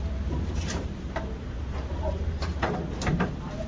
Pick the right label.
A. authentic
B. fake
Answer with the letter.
A